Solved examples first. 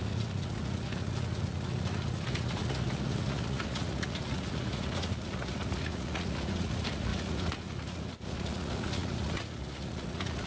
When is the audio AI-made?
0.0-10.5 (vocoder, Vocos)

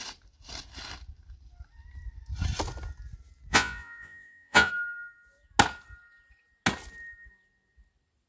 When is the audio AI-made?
3.5-4.7 (vocoder, Vocos)